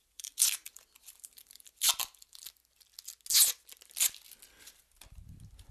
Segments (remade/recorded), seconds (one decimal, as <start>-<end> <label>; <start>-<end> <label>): 0.0-2.6 remade; 2.6-5.7 recorded